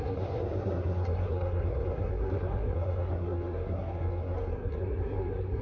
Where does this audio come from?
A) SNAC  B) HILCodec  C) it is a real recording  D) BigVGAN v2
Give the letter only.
A